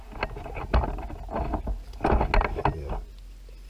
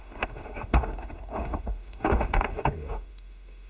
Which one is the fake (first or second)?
second